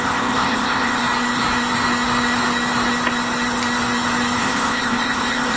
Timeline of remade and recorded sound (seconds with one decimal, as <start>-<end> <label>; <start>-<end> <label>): 0.0-1.0 remade; 1.0-4.4 recorded; 4.4-5.6 remade